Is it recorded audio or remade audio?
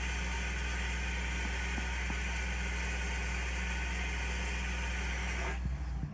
recorded